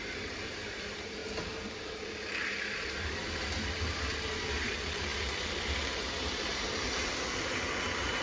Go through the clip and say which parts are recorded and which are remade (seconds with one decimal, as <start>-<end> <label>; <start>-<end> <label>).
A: 0.0-1.2 remade; 1.2-1.7 recorded; 1.7-2.4 remade; 2.4-3.8 recorded; 3.8-8.2 remade